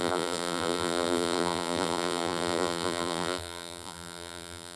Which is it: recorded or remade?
remade